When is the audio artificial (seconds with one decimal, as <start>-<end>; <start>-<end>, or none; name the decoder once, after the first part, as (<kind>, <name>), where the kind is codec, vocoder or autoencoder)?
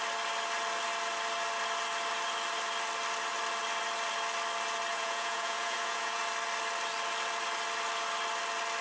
4.9-6.2 (vocoder, Vocos)